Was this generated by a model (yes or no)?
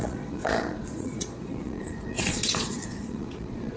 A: yes